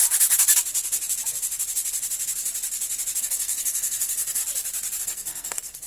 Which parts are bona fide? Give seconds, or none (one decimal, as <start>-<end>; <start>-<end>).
0.0-3.2; 4.4-5.0